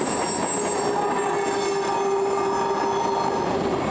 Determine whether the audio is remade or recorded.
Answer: recorded